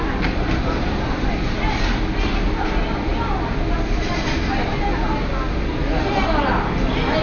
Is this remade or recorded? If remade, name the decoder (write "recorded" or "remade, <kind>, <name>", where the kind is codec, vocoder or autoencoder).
recorded